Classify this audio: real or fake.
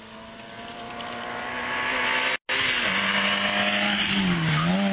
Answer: real